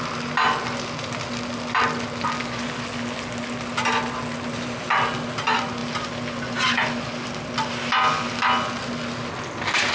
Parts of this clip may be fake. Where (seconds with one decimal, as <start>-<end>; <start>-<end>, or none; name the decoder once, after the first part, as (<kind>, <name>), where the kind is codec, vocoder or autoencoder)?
none

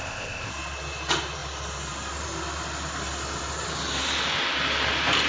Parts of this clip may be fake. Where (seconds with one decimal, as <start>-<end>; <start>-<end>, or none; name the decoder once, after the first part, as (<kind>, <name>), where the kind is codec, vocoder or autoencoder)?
0.0-0.5 (codec, ZipCodec)

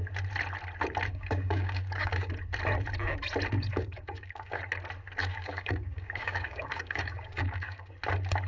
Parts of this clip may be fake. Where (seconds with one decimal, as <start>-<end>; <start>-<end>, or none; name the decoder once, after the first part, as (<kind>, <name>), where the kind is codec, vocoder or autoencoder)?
1.1-2.3 (codec, DAC); 3.7-4.6; 5.2-7.9

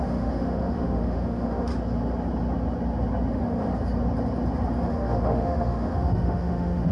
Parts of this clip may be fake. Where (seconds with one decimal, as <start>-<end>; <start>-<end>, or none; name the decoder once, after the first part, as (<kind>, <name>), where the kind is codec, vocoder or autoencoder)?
0.0-1.7 (autoencoder, DAC-VAE); 3.3-3.7; 4.9-6.9

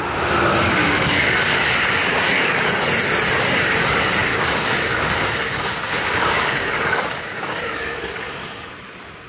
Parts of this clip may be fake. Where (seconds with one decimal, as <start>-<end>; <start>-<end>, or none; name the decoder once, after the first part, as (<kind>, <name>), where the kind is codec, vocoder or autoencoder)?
0.8-2.7 (codec, DAC); 4.2-8.7